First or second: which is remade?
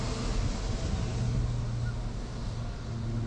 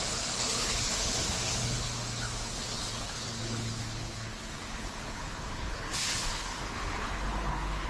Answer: second